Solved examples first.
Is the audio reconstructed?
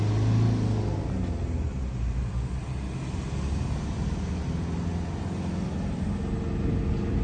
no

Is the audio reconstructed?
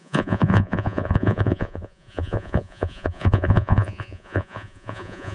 yes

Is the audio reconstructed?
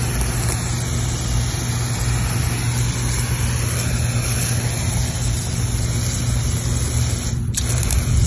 no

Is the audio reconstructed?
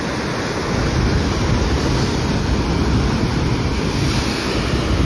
no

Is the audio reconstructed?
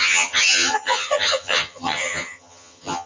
yes